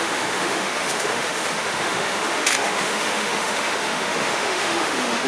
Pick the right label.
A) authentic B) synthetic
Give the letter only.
B